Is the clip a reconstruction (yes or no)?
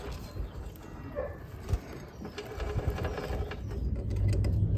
no